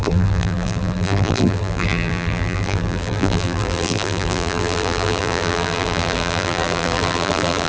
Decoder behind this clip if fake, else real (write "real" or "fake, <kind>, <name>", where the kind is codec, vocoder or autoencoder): fake, vocoder, BigVGAN v2